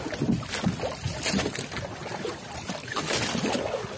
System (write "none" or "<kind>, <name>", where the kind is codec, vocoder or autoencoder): none